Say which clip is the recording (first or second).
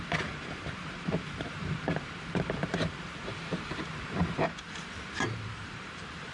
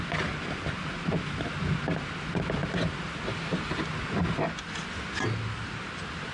second